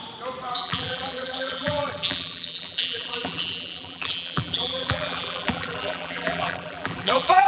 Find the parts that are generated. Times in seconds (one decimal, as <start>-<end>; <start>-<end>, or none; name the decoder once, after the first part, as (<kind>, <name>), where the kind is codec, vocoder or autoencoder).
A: 0.5-7.5 (vocoder, BigVGAN v2)